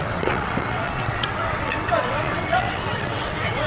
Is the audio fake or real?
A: fake